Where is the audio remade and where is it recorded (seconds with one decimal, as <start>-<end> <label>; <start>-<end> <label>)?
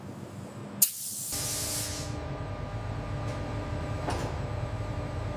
0.0-0.6 remade; 0.6-3.8 recorded; 3.8-5.4 remade